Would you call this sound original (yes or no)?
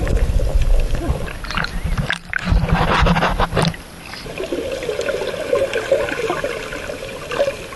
yes